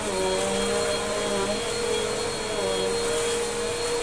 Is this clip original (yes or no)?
yes